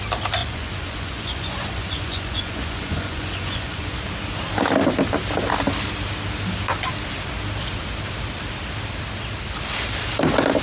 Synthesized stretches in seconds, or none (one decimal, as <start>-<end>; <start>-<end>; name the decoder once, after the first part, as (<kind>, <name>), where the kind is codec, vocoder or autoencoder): 0.4-4.0 (vocoder, Vocos)